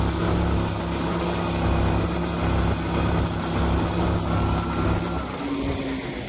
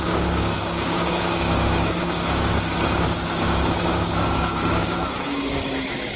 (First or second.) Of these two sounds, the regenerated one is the second